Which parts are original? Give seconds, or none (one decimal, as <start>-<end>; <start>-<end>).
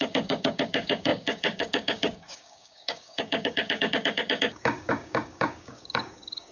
none